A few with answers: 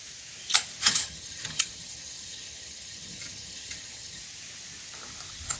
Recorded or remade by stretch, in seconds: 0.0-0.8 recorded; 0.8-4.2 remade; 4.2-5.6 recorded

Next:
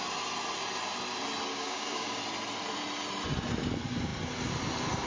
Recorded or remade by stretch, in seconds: 0.0-1.5 recorded; 1.5-2.2 remade; 2.2-5.1 recorded

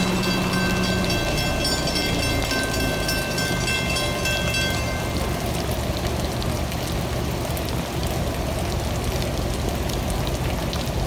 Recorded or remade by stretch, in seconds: 0.0-11.1 recorded

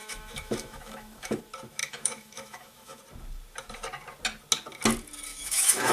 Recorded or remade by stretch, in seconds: 0.0-1.4 remade; 1.4-1.8 recorded; 1.8-3.0 remade; 3.0-5.3 recorded; 5.3-5.9 remade